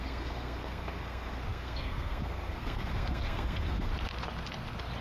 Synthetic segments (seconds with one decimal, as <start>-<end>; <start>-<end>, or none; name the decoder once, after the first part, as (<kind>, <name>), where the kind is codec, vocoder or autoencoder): 0.0-3.9 (codec, SNAC)